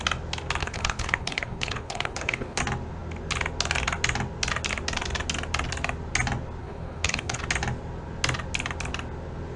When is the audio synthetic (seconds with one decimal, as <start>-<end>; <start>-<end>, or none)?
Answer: 0.6-2.6; 6.6-7.4